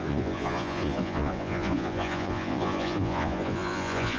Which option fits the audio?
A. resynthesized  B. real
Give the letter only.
A